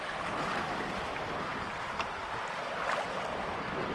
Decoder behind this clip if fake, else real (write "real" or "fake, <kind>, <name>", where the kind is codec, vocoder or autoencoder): real